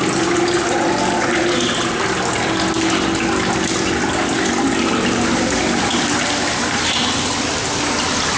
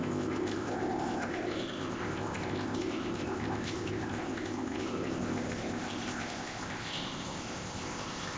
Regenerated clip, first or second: second